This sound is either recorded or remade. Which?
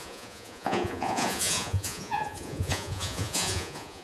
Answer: remade